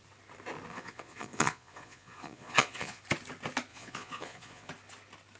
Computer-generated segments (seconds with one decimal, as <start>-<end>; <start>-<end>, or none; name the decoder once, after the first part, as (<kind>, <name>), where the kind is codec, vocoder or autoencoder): 0.7-3.0 (vocoder, Vocos); 3.7-4.7